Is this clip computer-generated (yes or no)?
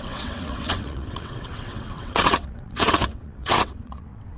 yes